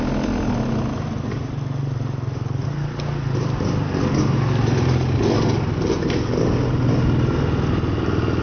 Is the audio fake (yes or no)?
no